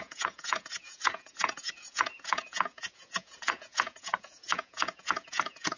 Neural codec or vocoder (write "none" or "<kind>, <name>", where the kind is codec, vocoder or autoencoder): vocoder, Vocos